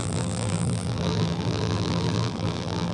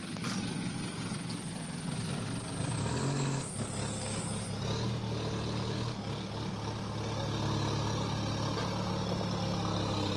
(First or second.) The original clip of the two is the second